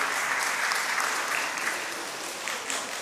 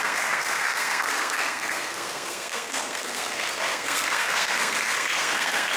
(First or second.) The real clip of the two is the first